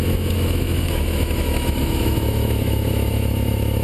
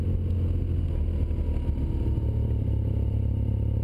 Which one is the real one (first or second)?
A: second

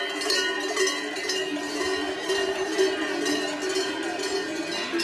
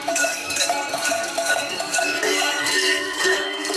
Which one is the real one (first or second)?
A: first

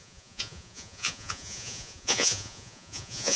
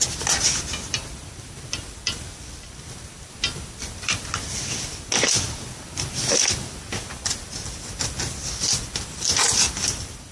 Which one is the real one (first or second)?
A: second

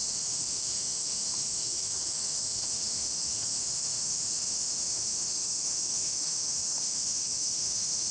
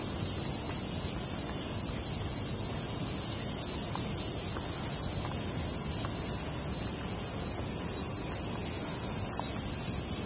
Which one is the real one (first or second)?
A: second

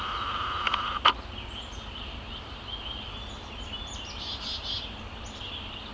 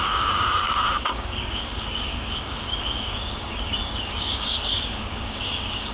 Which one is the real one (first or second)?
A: first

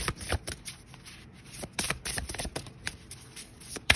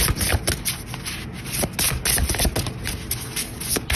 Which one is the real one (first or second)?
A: second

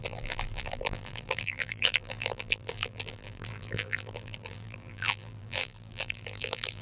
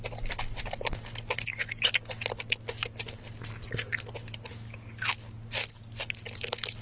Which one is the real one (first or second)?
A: second